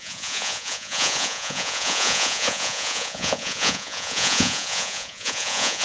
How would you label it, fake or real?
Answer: fake